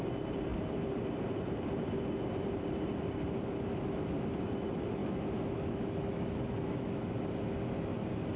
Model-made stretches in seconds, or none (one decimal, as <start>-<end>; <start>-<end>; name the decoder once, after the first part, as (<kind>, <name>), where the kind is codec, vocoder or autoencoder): 5.0-7.0 (autoencoder, DAC-VAE)